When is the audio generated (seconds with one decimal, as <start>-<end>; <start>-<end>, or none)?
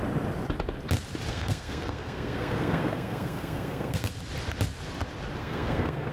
1.3-4.1; 5.4-6.1